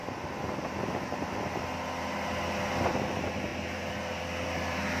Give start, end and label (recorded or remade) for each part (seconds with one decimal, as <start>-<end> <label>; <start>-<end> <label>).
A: 0.0-3.5 recorded; 3.5-4.1 remade; 4.1-5.0 recorded